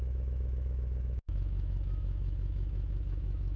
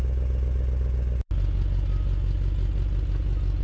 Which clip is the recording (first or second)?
second